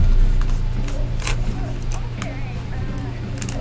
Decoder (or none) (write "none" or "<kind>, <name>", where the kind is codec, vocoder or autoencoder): none